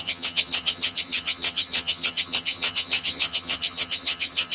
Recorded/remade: remade